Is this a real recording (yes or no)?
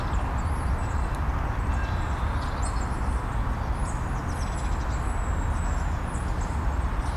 yes